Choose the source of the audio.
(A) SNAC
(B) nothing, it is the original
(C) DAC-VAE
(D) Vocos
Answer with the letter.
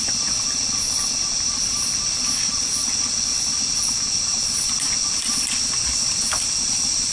B